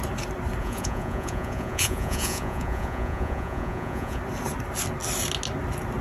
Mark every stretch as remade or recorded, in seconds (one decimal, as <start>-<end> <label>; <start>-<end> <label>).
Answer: 0.0-0.6 recorded; 0.6-4.2 remade; 4.2-6.0 recorded